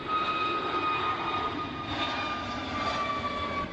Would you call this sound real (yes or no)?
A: yes